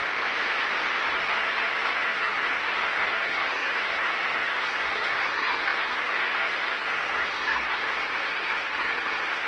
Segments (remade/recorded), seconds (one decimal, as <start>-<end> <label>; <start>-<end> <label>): 0.0-1.1 recorded; 1.1-9.5 remade